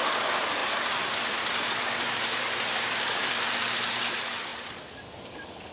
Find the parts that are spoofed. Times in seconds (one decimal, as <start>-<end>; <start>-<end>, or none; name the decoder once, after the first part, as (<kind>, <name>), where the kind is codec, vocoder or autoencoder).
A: 0.6-4.0 (vocoder, BigVGAN v2)